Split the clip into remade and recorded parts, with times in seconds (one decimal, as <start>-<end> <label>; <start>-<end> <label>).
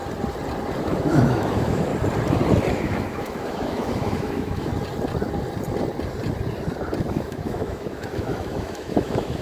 0.0-0.8 recorded; 0.8-1.9 remade; 1.9-2.7 recorded; 2.7-4.7 remade; 4.7-7.1 recorded; 7.1-9.4 remade